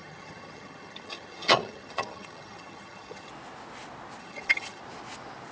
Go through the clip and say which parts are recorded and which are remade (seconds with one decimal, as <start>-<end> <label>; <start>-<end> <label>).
0.0-3.3 remade; 3.3-4.2 recorded; 4.2-4.8 remade; 4.8-5.5 recorded